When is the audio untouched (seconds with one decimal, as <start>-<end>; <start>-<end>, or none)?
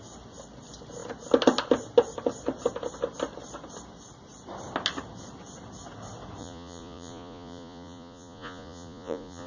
0.0-6.4